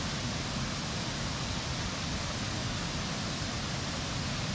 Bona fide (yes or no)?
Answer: yes